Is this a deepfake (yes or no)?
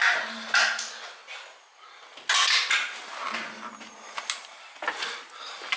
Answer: no